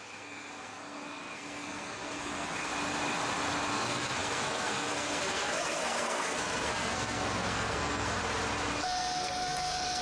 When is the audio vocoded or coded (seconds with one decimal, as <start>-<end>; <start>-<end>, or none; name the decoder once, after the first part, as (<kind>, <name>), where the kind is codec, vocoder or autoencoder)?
0.0-2.7 (codec, SNAC); 3.7-8.2; 8.8-10.0